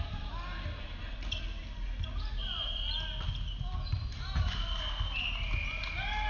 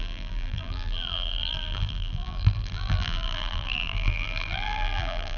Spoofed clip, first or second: second